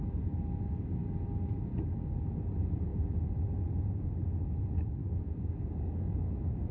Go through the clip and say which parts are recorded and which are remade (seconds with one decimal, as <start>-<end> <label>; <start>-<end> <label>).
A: 0.0-5.0 recorded; 5.0-6.2 remade; 6.2-6.7 recorded

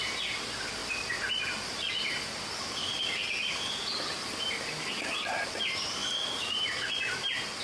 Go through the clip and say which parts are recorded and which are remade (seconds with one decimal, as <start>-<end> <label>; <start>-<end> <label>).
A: 0.0-7.6 recorded

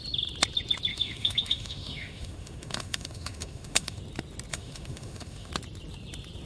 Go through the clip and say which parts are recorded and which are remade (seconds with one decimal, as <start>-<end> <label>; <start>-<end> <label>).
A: 0.0-0.9 recorded; 0.9-4.0 remade; 4.0-4.5 recorded; 4.5-5.5 remade; 5.5-6.5 recorded

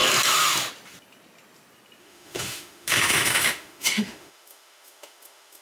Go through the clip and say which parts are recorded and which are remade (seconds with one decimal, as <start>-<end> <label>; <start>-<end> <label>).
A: 0.0-2.0 recorded; 2.0-5.6 remade

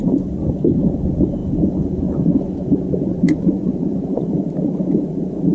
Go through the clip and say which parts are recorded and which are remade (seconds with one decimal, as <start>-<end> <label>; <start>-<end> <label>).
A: 0.0-3.1 recorded; 3.1-4.3 remade; 4.3-5.5 recorded

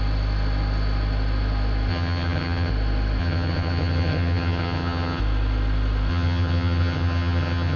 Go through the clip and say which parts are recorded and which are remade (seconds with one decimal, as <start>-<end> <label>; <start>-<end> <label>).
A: 0.0-1.9 recorded; 1.9-2.7 remade; 2.7-3.2 recorded; 3.2-5.2 remade; 5.2-6.1 recorded; 6.1-7.8 remade

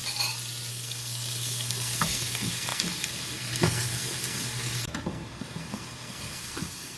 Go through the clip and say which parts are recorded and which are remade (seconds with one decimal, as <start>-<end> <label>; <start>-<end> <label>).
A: 0.0-0.7 recorded; 0.7-7.0 remade